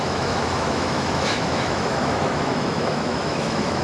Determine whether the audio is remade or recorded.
remade